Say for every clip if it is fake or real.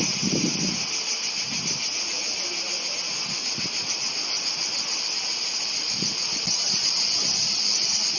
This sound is real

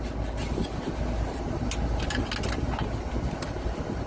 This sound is real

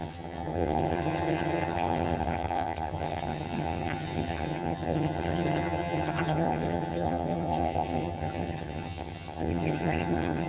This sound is fake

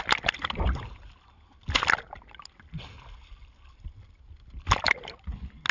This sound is real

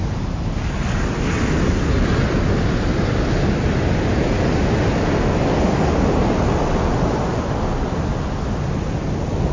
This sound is real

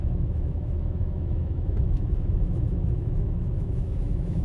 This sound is fake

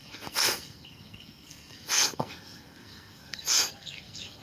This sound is fake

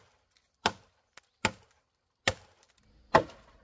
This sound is real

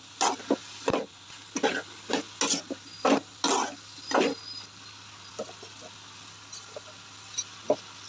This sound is real